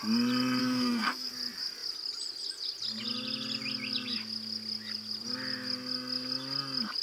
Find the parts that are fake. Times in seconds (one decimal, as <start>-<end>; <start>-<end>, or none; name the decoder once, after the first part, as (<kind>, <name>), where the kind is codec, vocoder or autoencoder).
0.6-1.3 (codec, SNAC)